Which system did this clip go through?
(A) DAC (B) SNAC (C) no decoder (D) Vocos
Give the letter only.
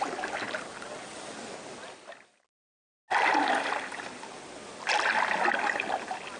C